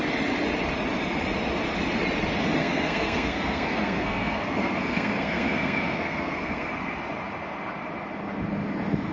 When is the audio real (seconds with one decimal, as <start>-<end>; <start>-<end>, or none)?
0.0-2.6; 6.7-9.1